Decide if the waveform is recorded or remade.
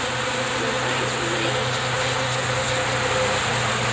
recorded